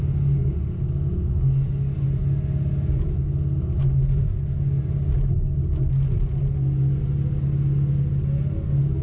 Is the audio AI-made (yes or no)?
no